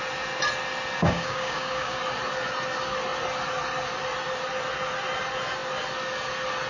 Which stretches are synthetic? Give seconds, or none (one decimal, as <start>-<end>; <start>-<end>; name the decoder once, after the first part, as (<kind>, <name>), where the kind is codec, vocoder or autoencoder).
1.0-2.0 (codec, DAC)